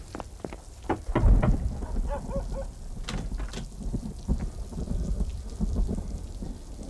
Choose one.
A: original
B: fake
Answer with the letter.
A